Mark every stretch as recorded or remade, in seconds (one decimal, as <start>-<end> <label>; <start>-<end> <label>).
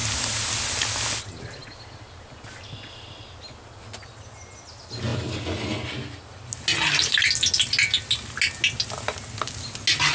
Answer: 0.0-10.1 recorded